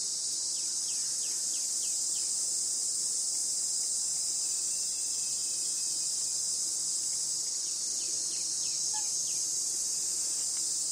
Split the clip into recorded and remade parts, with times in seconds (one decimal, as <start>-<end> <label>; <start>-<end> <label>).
0.0-10.9 recorded